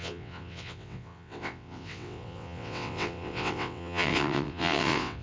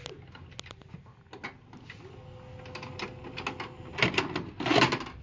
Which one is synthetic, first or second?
first